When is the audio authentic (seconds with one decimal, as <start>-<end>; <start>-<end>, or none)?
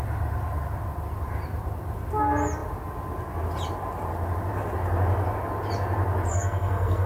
0.0-6.3